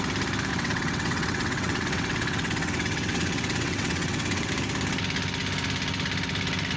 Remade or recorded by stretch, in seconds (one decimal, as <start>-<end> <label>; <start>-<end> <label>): 0.0-0.5 recorded; 0.5-4.5 remade; 4.5-6.8 recorded